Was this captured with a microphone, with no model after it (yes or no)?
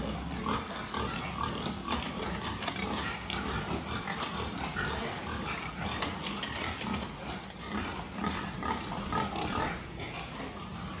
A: yes